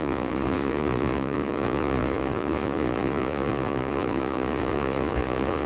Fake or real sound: fake